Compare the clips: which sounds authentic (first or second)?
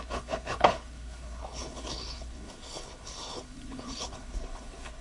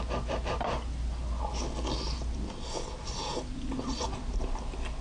second